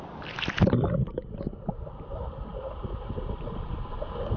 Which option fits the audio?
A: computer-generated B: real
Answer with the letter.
A